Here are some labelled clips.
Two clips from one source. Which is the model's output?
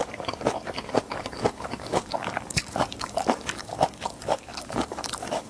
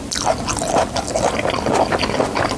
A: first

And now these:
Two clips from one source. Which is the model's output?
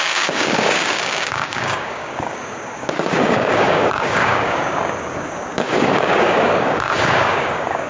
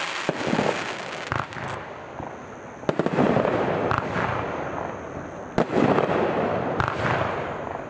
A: first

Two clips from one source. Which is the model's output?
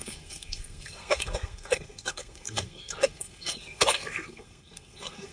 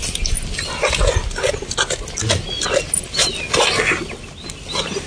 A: first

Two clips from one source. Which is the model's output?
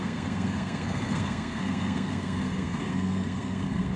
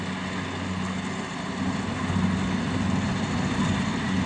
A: first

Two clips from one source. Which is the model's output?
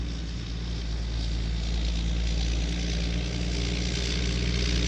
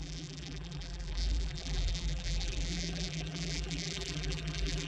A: second